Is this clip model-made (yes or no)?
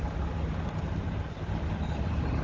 no